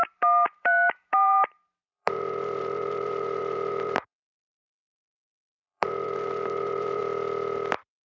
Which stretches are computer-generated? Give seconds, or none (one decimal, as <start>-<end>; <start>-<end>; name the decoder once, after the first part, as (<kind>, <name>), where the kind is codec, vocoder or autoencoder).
0.0-7.0 (vocoder, BigVGAN v2)

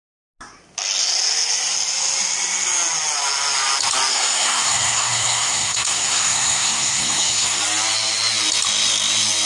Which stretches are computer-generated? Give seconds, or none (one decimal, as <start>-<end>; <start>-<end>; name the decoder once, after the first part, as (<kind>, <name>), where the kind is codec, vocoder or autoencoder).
4.1-7.6 (codec, SNAC)

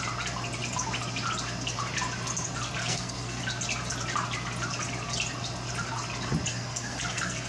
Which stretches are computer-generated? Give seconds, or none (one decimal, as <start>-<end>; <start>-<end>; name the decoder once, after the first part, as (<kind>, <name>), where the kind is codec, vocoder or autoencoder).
2.8-3.4 (codec, SNAC); 6.5-7.5

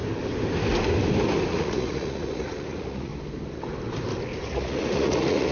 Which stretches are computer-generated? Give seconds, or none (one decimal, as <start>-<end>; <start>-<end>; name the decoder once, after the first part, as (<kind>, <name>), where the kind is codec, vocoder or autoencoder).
1.5-3.1 (vocoder, Vocos); 4.4-5.5

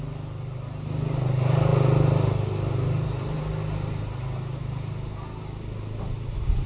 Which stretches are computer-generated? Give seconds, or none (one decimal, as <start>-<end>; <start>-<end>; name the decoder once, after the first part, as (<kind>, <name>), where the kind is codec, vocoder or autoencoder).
none

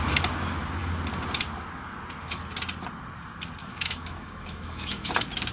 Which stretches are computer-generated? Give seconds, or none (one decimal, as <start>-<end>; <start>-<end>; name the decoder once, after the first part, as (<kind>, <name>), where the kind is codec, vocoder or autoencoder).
3.6-5.1 (autoencoder, DAC-VAE)